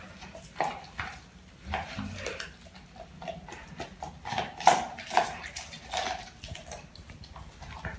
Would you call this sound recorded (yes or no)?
yes